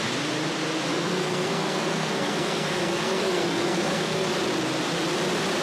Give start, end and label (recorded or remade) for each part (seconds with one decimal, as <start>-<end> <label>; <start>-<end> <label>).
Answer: 0.0-0.9 recorded; 0.9-4.3 remade; 4.3-5.6 recorded